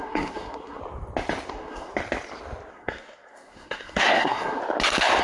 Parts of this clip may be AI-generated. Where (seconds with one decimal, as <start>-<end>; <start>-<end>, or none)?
0.0-0.8; 1.5-1.9; 2.7-4.6